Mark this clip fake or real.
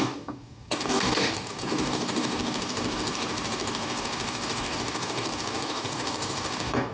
fake